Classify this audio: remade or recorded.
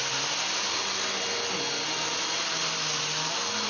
recorded